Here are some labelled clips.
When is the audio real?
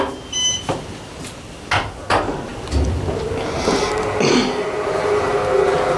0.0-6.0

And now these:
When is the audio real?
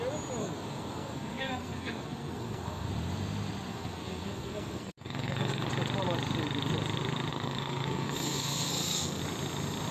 0.0-0.4; 2.9-3.7; 5.7-7.3; 9.2-9.9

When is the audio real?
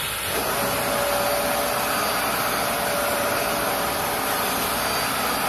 0.0-3.1; 3.7-5.5